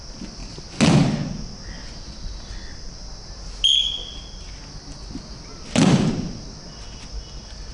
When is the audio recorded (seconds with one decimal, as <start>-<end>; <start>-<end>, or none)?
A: 0.0-7.7